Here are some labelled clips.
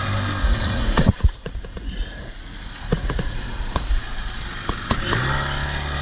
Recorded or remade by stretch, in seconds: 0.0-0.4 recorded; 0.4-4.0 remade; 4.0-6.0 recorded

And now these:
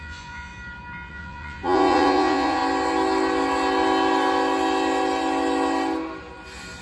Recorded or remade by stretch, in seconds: 0.0-0.5 remade; 0.5-1.1 recorded; 1.1-2.6 remade; 2.6-6.8 recorded